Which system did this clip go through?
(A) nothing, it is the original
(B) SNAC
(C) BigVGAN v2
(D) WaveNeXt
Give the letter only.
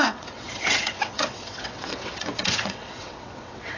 D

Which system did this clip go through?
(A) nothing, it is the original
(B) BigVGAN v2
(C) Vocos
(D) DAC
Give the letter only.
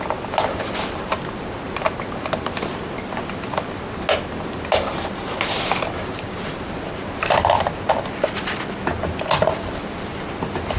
A